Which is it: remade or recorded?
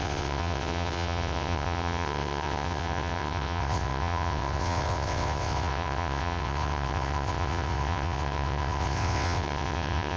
remade